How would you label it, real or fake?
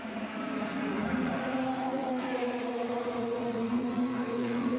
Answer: fake